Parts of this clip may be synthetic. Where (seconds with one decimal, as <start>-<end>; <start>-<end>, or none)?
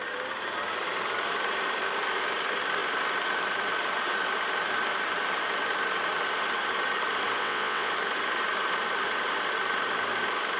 7.4-7.9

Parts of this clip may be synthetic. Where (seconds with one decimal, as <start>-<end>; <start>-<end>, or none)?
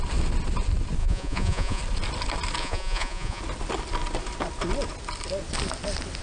1.0-1.8; 2.6-3.4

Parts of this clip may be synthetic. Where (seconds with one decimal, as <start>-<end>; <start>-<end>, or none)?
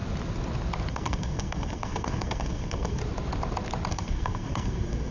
0.9-3.0; 3.9-5.1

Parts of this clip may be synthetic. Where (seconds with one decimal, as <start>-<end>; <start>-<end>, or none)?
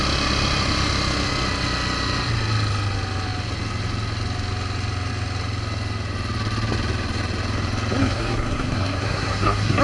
8.0-9.8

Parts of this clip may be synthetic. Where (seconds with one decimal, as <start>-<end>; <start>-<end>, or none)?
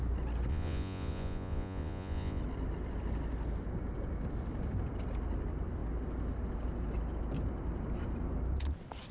0.5-2.4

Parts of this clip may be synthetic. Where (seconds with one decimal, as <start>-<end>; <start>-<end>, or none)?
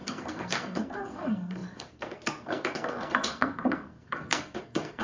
0.0-5.0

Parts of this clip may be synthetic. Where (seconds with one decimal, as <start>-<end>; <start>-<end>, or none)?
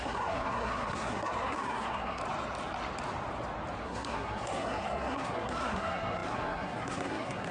0.0-2.2; 3.8-7.5